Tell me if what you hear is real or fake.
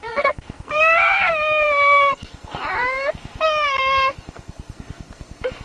fake